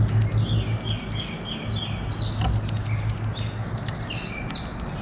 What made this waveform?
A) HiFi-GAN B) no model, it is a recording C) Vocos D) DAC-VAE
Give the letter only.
B